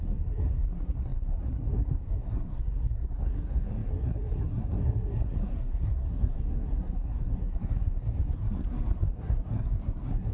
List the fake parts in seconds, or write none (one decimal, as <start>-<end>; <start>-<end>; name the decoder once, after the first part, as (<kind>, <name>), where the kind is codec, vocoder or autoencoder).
0.0-10.3 (codec, SNAC)